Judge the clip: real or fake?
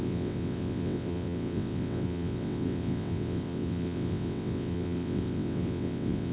fake